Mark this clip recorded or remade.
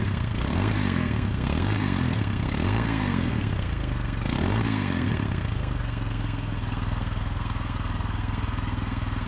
remade